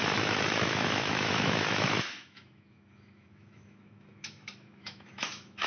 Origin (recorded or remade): remade